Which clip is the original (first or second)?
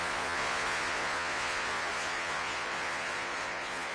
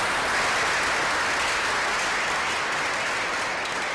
second